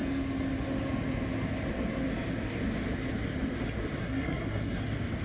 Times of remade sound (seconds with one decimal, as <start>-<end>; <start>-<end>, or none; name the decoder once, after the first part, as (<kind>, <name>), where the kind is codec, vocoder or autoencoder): 4.0-4.8 (codec, SNAC)